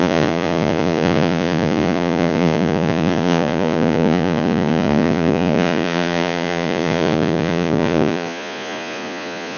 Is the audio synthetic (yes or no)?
yes